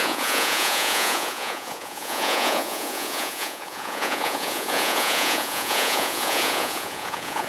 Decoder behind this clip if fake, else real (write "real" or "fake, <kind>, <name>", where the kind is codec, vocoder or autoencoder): fake, vocoder, Vocos